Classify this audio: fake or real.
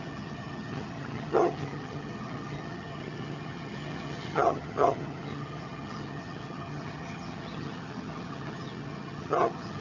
fake